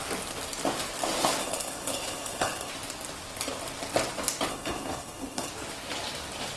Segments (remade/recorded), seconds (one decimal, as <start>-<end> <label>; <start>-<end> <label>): 0.0-1.4 recorded; 1.4-2.7 remade; 2.7-4.5 recorded; 4.5-5.5 remade; 5.5-6.6 recorded